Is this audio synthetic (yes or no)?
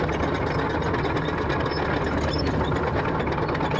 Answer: no